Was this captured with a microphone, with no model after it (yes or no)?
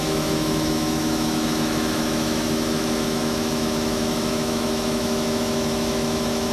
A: no